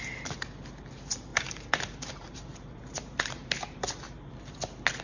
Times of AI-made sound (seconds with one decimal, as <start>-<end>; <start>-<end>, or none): 1.3-4.3